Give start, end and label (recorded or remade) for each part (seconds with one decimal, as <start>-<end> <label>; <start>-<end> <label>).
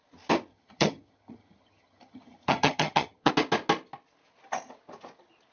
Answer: 0.0-0.5 recorded; 0.5-3.3 remade; 3.3-5.5 recorded